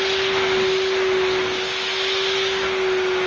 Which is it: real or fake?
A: real